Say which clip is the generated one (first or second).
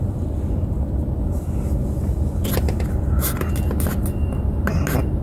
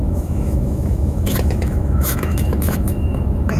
second